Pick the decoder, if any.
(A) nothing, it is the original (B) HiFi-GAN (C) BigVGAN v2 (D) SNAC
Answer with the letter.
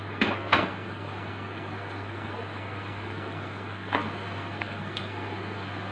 D